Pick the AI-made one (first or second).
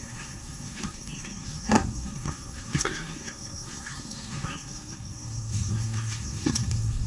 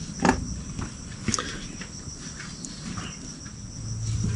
first